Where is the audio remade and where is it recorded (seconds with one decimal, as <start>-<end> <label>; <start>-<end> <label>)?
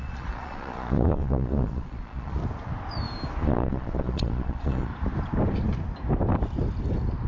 0.0-2.4 remade; 2.4-3.4 recorded; 3.4-4.9 remade; 4.9-7.3 recorded